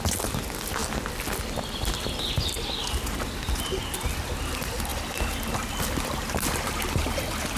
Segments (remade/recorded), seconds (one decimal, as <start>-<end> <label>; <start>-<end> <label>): 0.0-7.6 recorded